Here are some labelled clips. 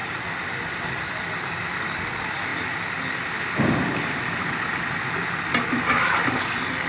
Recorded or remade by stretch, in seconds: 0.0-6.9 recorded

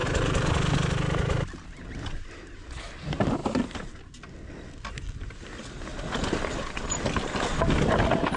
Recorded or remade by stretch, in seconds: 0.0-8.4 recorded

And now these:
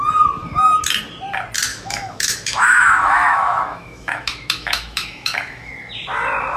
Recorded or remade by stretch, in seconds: 0.0-1.7 recorded; 1.7-5.7 remade; 5.7-6.6 recorded

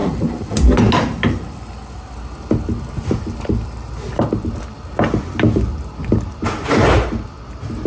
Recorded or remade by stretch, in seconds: 0.0-7.9 recorded

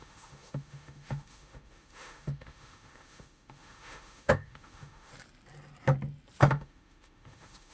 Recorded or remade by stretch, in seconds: 0.0-5.1 remade; 5.1-6.4 recorded; 6.4-7.7 remade

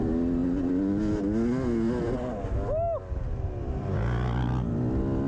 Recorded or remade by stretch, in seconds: 0.0-5.3 recorded

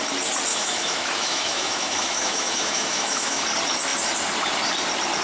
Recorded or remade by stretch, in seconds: 0.0-0.5 recorded; 0.5-3.4 remade; 3.4-5.2 recorded

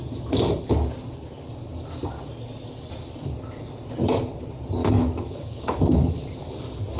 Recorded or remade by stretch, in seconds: 0.0-4.8 recorded; 4.8-6.2 remade; 6.2-7.0 recorded